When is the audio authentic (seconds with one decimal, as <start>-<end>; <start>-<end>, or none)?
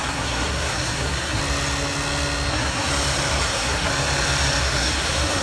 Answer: 1.4-2.5; 2.9-3.4; 3.9-4.6